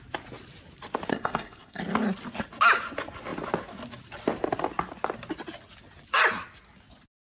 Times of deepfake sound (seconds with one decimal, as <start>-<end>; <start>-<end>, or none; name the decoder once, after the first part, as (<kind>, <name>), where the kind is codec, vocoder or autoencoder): 1.1-1.8 (codec, SNAC)